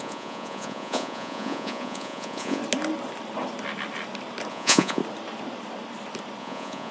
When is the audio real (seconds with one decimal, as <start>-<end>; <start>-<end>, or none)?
2.6-4.5; 5.0-6.4